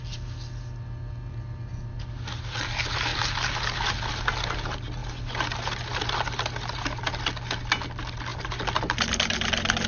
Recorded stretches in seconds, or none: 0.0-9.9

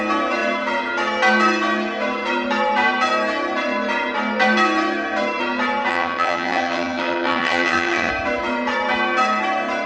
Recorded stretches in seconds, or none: 0.0-5.9; 8.1-9.9

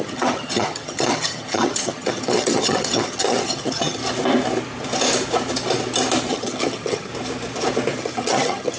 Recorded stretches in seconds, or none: 4.0-6.3; 7.1-8.0

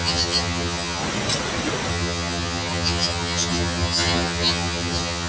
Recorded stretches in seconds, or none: 1.0-1.9

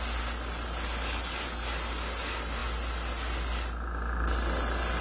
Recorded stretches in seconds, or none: 0.0-5.0